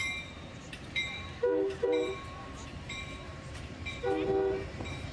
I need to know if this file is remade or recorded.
remade